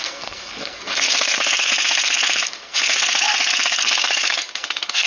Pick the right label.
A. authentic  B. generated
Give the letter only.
B